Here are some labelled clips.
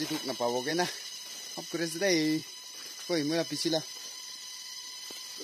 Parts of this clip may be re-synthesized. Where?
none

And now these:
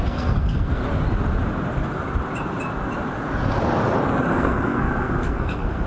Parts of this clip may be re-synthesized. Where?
0.0-0.8 (codec, SNAC); 4.3-5.9

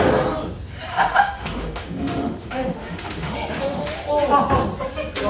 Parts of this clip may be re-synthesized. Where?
0.9-4.1 (autoencoder, DAC-VAE)

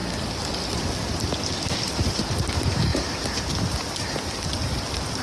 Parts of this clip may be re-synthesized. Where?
0.0-2.9 (vocoder, BigVGAN v2); 3.6-5.2

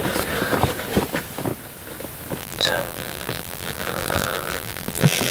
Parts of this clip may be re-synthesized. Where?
2.4-5.3 (vocoder, BigVGAN v2)